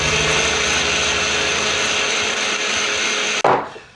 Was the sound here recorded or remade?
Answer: recorded